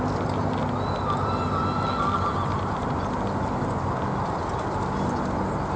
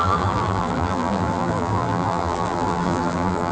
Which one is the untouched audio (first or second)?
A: first